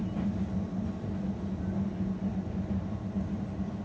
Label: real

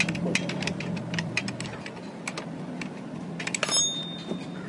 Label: real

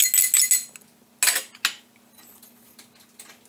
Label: real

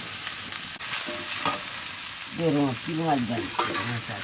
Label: real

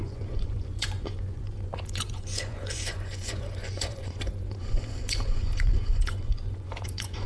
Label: fake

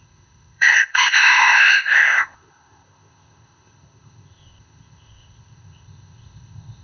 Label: fake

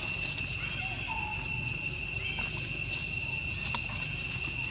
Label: real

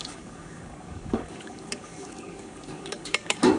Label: fake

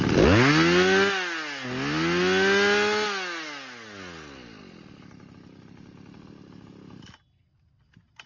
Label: real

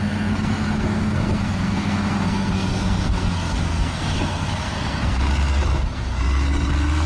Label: fake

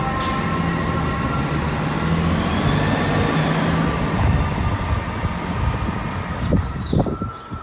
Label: real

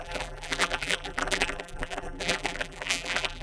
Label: fake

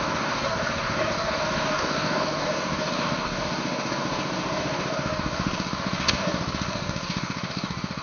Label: fake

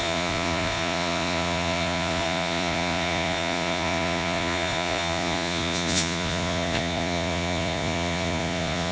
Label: fake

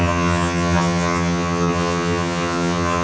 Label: fake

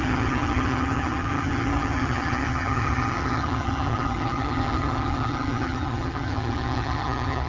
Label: fake